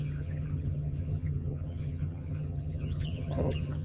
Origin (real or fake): fake